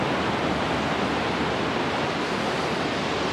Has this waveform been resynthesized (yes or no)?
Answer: no